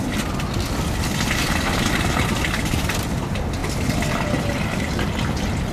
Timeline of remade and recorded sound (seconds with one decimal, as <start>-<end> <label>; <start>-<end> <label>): 0.0-5.7 recorded